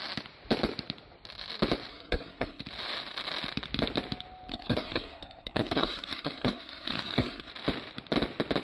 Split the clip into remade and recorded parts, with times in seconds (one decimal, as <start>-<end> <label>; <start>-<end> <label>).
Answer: 0.0-1.9 recorded; 1.9-2.6 remade; 2.6-4.5 recorded; 4.5-7.5 remade; 7.5-8.6 recorded